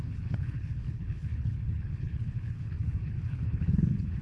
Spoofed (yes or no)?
yes